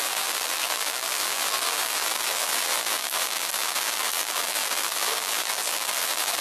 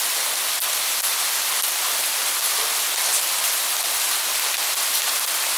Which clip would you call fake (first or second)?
first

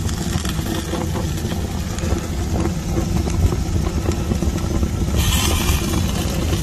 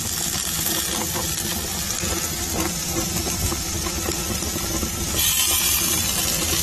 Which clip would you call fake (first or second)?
first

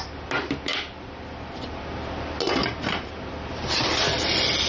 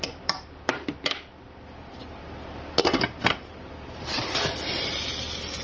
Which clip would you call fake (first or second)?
second